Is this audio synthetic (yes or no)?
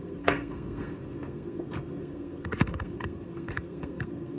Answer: yes